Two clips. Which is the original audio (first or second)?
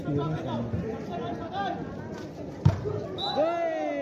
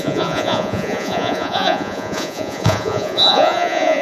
first